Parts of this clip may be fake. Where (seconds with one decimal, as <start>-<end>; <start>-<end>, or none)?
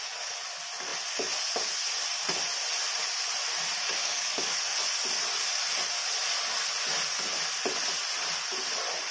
4.0-4.6